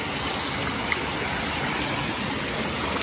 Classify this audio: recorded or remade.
recorded